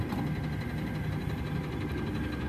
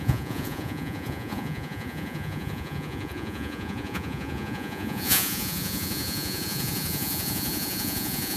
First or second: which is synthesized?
second